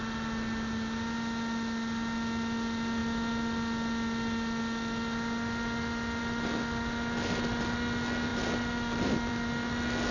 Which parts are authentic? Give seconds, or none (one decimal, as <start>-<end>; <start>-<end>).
0.0-10.1